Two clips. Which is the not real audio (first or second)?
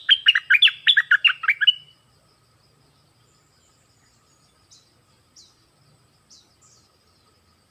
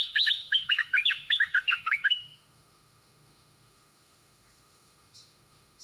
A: second